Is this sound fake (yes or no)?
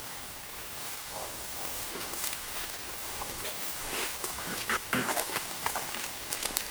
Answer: yes